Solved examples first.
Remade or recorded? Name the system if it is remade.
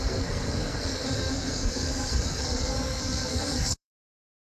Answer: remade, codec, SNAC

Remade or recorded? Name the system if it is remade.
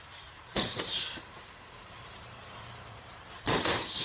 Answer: remade, vocoder, BigVGAN v2